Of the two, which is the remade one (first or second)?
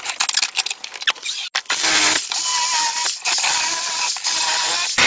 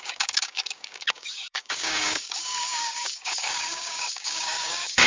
second